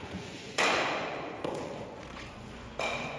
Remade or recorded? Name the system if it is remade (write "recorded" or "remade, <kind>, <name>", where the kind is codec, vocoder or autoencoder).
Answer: remade, vocoder, Vocos